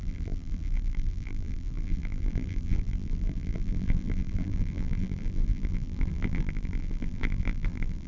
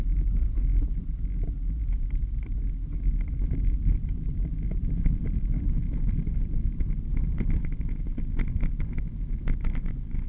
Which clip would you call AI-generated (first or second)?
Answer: first